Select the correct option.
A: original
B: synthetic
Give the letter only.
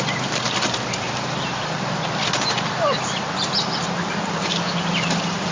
B